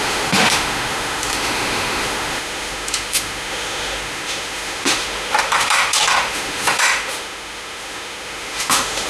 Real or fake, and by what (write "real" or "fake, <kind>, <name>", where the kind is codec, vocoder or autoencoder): fake, autoencoder, DAC-VAE